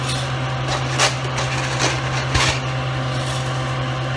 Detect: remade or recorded recorded